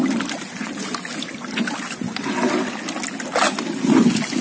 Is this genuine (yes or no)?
yes